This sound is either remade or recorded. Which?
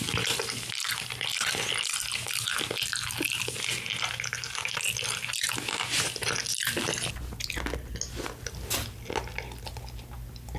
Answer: recorded